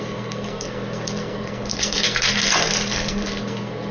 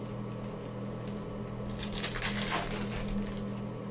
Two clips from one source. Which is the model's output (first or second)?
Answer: first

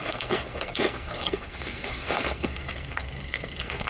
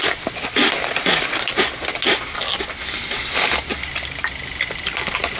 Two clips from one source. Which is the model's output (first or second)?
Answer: first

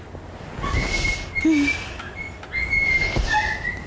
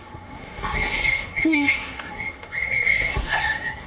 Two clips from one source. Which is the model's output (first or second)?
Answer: second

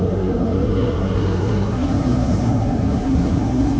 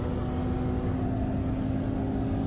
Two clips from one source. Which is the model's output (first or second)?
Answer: first